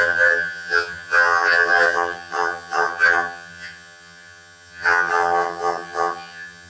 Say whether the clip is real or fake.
fake